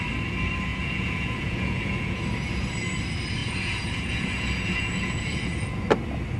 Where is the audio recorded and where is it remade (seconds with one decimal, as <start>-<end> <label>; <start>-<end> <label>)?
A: 0.0-0.7 recorded; 0.7-2.2 remade; 2.2-3.4 recorded; 3.4-5.8 remade; 5.8-6.4 recorded